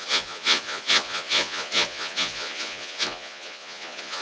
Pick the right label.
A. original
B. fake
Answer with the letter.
B